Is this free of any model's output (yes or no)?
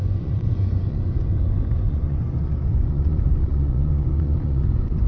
no